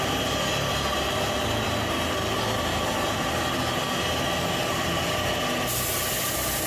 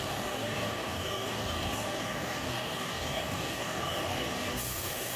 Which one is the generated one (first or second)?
second